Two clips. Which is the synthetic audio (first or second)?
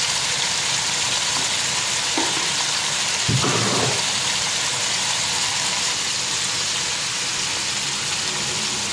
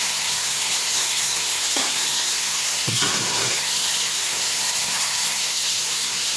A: second